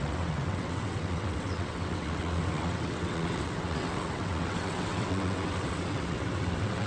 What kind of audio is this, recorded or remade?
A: remade